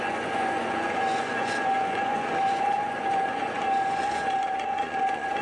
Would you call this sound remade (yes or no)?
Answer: yes